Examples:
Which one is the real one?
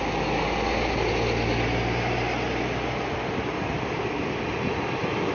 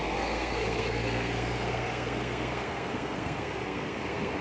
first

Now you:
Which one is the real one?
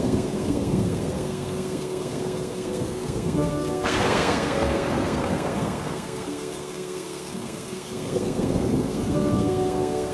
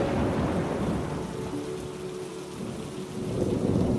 second